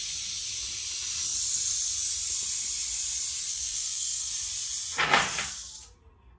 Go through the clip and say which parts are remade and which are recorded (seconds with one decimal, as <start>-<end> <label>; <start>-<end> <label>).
0.0-3.5 recorded; 3.5-4.3 remade; 4.3-6.4 recorded